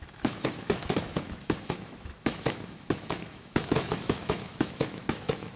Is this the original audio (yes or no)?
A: no